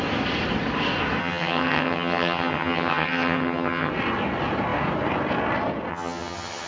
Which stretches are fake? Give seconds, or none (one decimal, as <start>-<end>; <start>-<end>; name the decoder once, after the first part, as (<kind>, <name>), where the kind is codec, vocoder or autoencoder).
1.2-3.9 (vocoder, HiFi-GAN); 5.9-6.7